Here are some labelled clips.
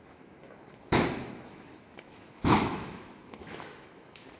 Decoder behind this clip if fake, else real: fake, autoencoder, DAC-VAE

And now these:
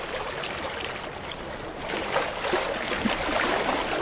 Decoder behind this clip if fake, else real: real